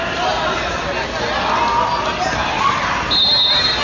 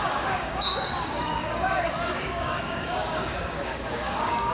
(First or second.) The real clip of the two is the first